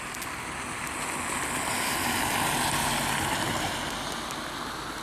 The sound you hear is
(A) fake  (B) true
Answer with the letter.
B